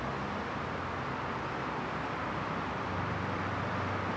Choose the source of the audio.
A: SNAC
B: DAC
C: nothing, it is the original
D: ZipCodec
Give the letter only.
C